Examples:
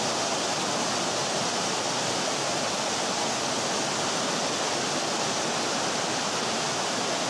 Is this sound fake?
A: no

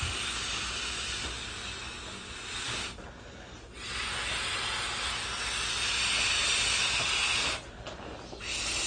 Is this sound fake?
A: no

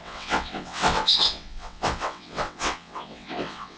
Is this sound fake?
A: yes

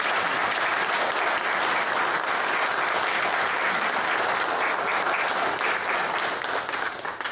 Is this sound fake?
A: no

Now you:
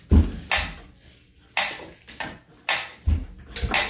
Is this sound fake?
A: no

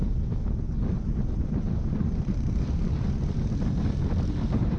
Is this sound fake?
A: no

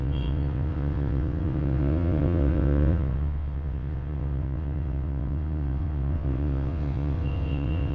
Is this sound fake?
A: yes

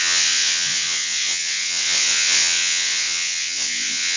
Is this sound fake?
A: yes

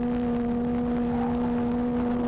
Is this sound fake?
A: no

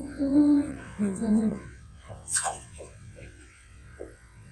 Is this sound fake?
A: yes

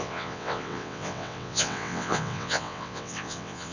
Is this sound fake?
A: yes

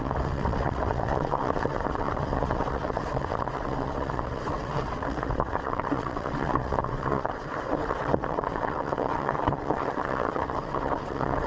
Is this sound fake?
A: yes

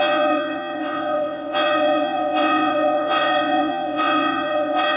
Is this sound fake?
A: yes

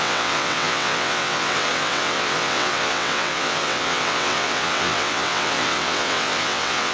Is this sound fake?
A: yes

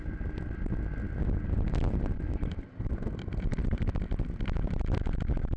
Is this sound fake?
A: no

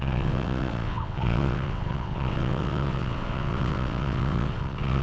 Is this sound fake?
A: yes